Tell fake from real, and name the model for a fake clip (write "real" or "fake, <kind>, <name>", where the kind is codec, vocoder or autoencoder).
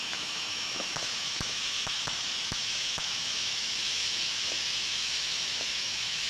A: fake, autoencoder, DAC-VAE